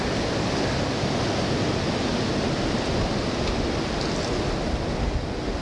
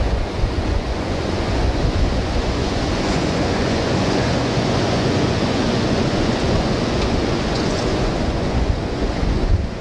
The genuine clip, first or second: first